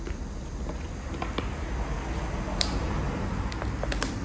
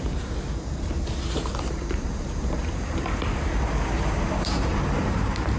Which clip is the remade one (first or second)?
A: second